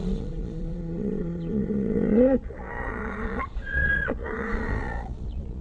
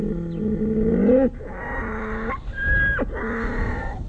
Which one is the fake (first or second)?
first